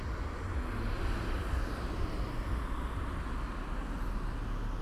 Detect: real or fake real